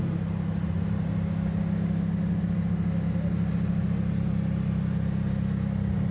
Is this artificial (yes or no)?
no